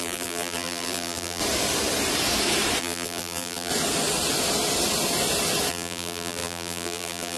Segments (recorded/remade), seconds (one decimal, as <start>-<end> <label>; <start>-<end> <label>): 0.0-1.4 remade; 1.4-2.8 recorded; 2.8-3.7 remade; 3.7-5.7 recorded; 5.7-7.4 remade